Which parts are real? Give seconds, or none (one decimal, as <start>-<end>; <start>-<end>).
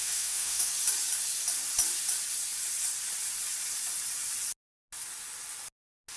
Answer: 0.7-6.2